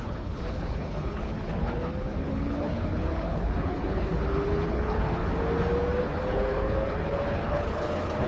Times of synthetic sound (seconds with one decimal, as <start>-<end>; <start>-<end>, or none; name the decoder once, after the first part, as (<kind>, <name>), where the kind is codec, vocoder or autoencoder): 0.0-5.2 (codec, HILCodec); 6.0-8.3